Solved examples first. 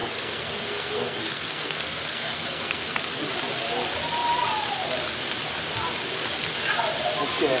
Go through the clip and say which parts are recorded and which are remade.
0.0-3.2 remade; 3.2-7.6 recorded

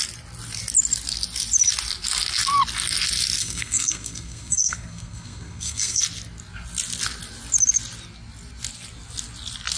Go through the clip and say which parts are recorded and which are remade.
0.0-3.4 recorded; 3.4-6.0 remade; 6.0-9.8 recorded

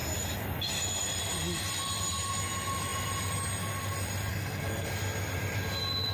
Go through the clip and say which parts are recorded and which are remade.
0.0-4.3 recorded; 4.3-4.9 remade; 4.9-6.1 recorded

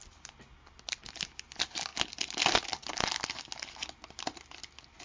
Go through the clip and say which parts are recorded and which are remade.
0.0-5.0 recorded

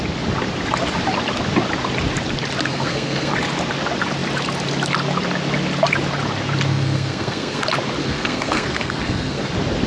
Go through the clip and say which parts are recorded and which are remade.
0.0-2.7 recorded; 2.7-3.3 remade; 3.3-6.7 recorded; 6.7-7.6 remade; 7.6-8.0 recorded; 8.0-9.5 remade; 9.5-9.9 recorded

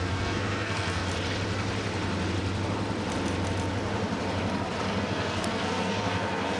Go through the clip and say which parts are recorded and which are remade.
0.0-1.0 remade; 1.0-5.0 recorded; 5.0-6.6 remade

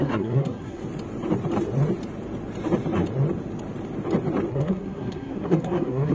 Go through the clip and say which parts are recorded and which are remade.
0.0-0.8 remade; 0.8-4.5 recorded; 4.5-6.1 remade

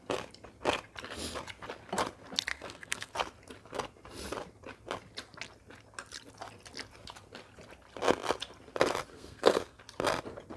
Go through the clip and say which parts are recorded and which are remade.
0.0-2.5 recorded; 2.5-3.1 remade; 3.1-9.1 recorded; 9.1-9.8 remade; 9.8-10.6 recorded